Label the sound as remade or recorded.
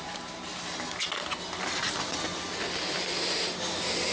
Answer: recorded